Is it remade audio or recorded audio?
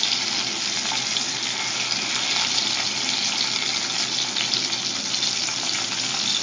recorded